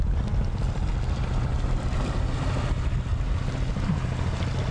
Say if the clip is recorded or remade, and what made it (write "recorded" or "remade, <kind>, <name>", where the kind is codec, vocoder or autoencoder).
recorded